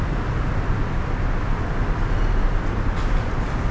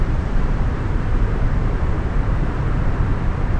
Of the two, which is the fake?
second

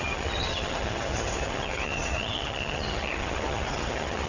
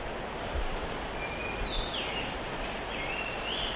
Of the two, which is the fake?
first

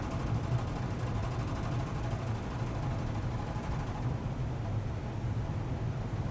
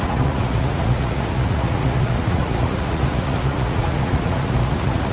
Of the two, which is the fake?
second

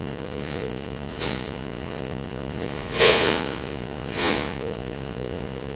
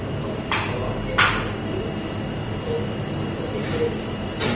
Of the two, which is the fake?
first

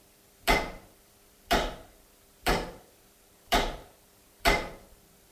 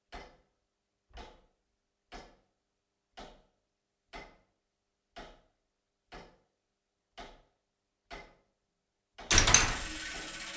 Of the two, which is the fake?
first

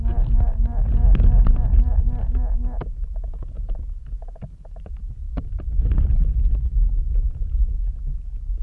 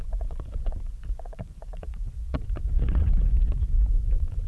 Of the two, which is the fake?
second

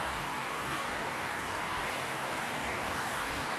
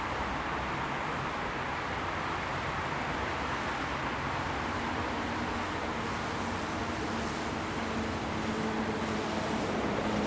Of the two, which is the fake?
first